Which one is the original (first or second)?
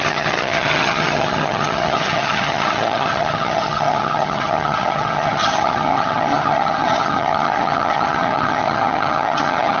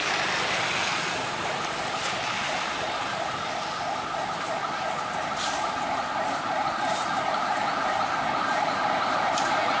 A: second